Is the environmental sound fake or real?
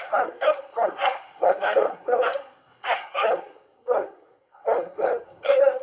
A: fake